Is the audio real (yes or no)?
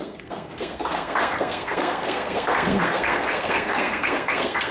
no